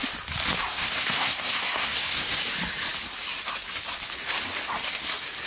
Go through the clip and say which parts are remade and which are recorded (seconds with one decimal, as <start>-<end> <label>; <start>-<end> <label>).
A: 0.0-0.7 recorded; 0.7-2.4 remade; 2.4-5.5 recorded